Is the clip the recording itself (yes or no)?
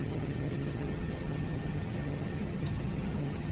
no